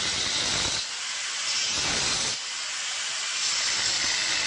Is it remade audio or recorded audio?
recorded